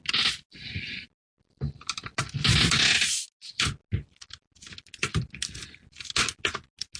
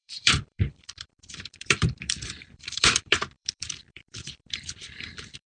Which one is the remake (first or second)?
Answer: second